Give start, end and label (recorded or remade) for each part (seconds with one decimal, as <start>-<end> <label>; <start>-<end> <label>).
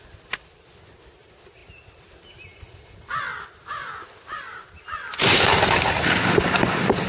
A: 0.0-7.1 recorded